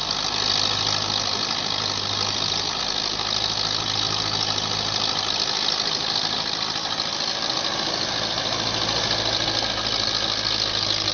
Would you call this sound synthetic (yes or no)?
no